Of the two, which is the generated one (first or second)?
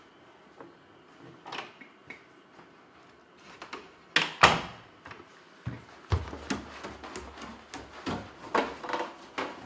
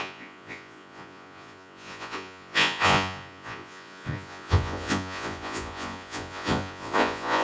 second